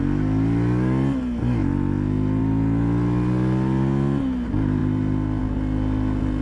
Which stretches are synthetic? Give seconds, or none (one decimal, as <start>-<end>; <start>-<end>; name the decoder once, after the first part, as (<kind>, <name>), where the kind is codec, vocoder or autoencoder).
none